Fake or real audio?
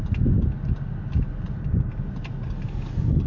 real